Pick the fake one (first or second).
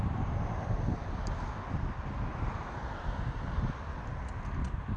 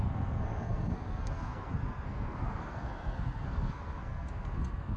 second